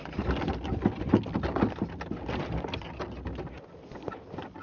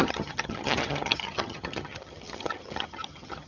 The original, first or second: first